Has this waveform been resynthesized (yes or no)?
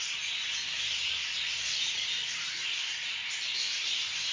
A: no